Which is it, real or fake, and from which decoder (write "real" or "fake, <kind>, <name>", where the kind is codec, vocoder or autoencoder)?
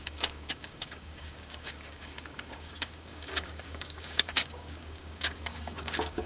fake, codec, DAC